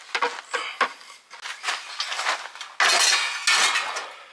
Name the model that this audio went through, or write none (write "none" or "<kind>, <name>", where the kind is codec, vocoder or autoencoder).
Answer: none